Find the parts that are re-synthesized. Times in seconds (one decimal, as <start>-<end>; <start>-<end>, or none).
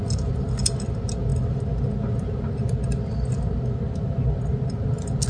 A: none